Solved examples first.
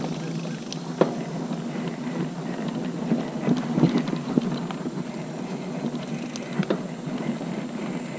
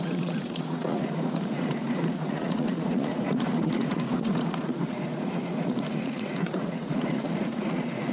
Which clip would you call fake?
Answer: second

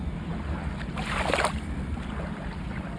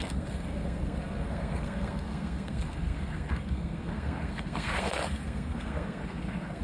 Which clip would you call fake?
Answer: second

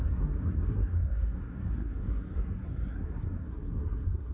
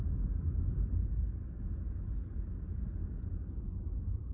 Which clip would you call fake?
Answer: first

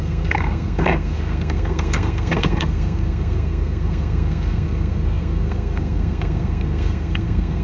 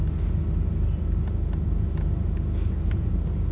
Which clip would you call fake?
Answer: first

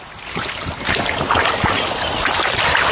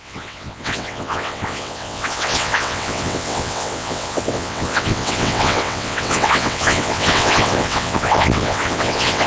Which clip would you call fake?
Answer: second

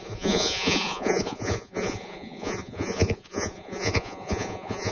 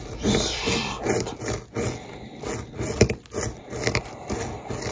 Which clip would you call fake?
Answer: first